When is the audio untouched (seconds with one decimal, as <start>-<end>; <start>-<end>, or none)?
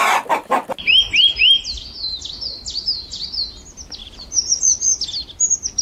0.0-4.0; 4.7-5.8